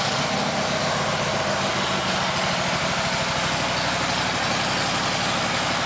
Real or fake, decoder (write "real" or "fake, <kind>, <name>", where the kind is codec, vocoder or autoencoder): real